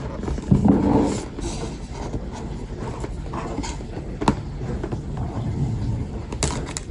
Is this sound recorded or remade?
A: recorded